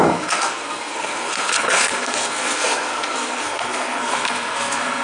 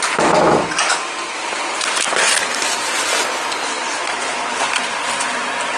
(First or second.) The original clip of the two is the second